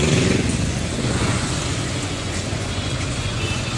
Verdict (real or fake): fake